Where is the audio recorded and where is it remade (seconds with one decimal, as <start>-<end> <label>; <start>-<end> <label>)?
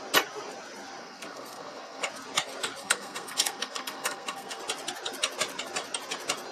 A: 0.0-1.0 recorded; 1.0-2.1 remade; 2.1-2.8 recorded; 2.8-4.6 remade; 4.6-6.5 recorded